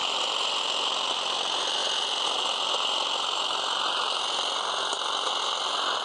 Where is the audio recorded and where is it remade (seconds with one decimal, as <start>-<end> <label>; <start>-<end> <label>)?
0.0-6.0 recorded